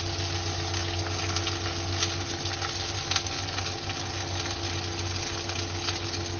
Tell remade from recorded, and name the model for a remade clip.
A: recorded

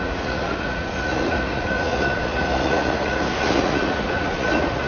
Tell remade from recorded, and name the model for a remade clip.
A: remade, vocoder, Vocos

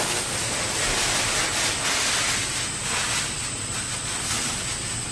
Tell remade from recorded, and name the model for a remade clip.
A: recorded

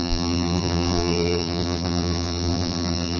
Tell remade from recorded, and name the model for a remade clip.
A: remade, vocoder, BigVGAN v2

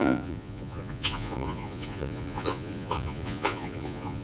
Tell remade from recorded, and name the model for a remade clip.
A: remade, vocoder, Vocos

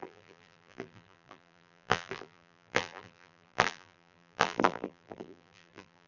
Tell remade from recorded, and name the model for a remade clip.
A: remade, vocoder, BigVGAN v2